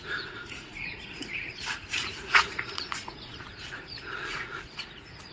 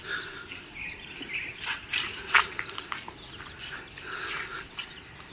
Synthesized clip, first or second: first